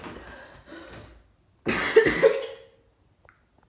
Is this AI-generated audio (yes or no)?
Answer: no